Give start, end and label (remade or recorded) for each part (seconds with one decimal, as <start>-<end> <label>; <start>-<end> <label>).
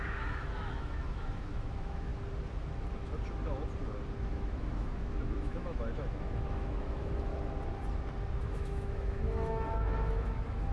0.0-2.1 remade; 2.1-4.3 recorded; 4.3-7.3 remade; 7.3-8.4 recorded; 8.4-10.7 remade